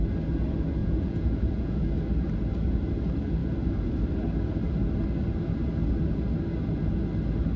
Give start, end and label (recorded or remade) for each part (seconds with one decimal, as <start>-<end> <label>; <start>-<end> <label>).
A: 0.0-0.8 recorded; 0.8-1.8 remade; 1.8-7.6 recorded

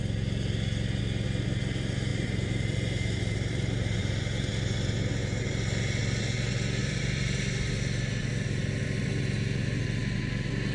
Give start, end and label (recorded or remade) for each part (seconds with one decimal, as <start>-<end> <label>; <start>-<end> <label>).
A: 0.0-2.1 recorded; 2.1-4.0 remade; 4.0-6.8 recorded; 6.8-8.2 remade; 8.2-10.7 recorded

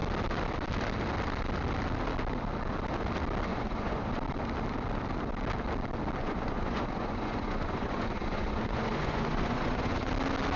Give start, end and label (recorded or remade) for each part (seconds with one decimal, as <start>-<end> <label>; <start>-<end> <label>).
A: 0.0-3.5 recorded; 3.5-4.1 remade; 4.1-6.2 recorded; 6.2-10.1 remade; 10.1-10.6 recorded

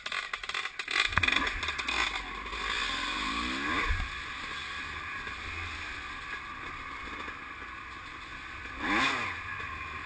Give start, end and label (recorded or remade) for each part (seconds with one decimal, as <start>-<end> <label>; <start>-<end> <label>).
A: 0.0-10.1 recorded

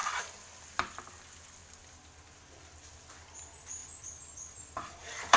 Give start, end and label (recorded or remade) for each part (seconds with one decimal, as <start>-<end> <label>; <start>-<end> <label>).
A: 0.0-3.8 recorded; 3.8-5.4 remade

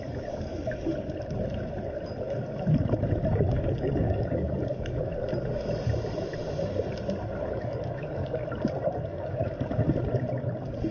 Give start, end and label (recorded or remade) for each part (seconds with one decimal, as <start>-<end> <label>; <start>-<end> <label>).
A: 0.0-0.5 remade; 0.5-3.3 recorded; 3.3-5.1 remade; 5.1-7.5 recorded; 7.5-8.4 remade; 8.4-9.0 recorded; 9.0-9.4 remade; 9.4-10.9 recorded

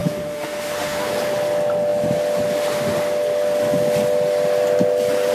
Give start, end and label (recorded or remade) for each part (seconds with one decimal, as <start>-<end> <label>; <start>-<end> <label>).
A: 0.0-1.1 remade; 1.1-5.3 recorded